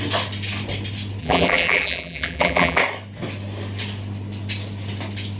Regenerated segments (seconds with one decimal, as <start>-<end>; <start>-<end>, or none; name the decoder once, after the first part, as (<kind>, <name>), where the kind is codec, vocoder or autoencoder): 1.2-2.8 (vocoder, BigVGAN v2)